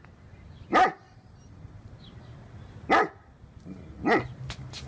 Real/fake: real